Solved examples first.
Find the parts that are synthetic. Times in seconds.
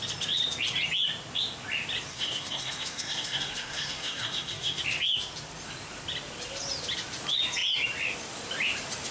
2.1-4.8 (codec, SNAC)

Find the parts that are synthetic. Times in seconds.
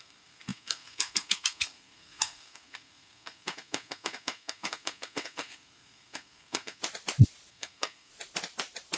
0.0-6.8 (codec, SNAC); 7.5-8.1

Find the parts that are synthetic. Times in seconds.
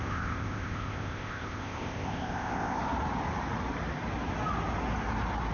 0.0-2.8 (codec, ZipCodec)